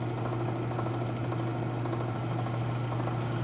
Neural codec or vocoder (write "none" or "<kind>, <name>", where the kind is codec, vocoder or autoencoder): none